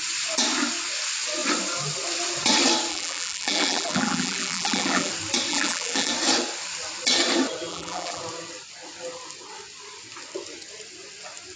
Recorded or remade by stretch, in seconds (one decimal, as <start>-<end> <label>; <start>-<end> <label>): 0.0-2.9 recorded; 2.9-5.1 remade; 5.1-5.5 recorded; 5.5-6.1 remade; 6.1-7.7 recorded; 7.7-8.2 remade; 8.2-11.6 recorded